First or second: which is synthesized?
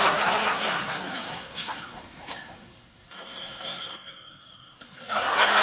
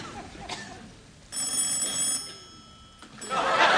first